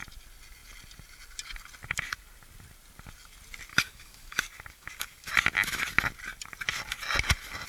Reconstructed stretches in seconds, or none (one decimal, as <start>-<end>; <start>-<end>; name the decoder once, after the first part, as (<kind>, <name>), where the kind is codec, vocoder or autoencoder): 3.7-5.3 (codec, DAC)